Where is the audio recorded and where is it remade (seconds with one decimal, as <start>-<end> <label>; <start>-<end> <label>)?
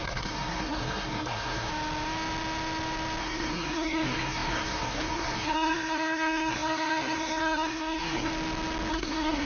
0.0-1.7 remade; 1.7-3.2 recorded; 3.2-8.3 remade; 8.3-8.9 recorded; 8.9-9.5 remade